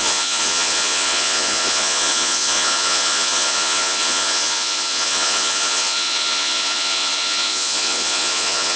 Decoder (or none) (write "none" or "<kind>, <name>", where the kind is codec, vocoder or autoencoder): vocoder, Vocos